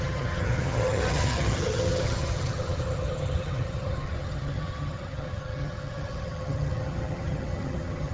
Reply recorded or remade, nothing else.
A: remade